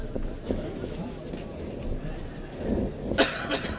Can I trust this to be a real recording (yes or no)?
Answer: yes